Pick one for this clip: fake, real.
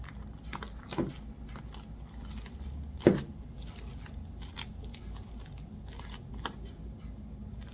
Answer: real